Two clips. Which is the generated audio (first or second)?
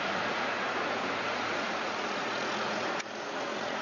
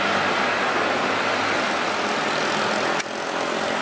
first